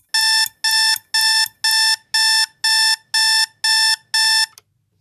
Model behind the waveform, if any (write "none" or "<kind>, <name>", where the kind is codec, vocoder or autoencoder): none